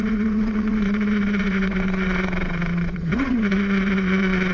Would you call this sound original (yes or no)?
no